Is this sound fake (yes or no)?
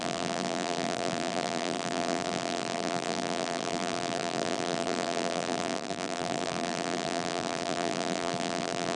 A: yes